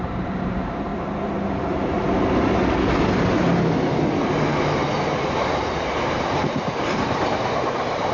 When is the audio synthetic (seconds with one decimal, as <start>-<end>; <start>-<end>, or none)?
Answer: 0.0-0.9; 5.3-8.1